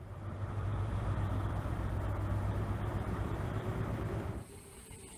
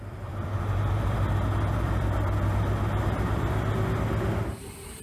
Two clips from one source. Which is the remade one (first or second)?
first